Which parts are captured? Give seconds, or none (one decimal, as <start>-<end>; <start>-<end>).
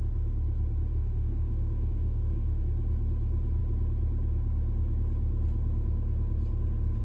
0.0-0.9; 2.6-7.0